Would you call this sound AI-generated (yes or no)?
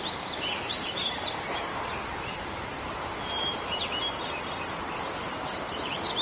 yes